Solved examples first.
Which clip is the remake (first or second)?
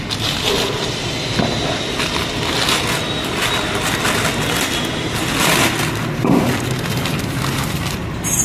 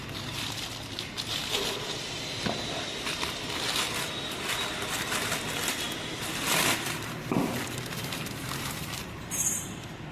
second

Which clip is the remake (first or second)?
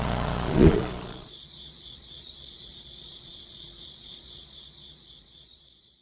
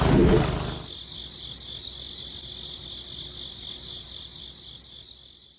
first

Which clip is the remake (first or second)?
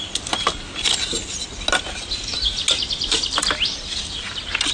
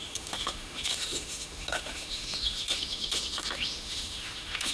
second